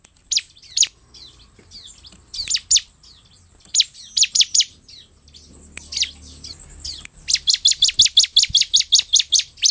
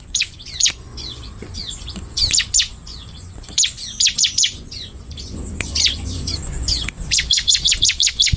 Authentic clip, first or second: first